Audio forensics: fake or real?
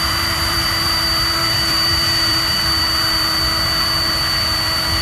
fake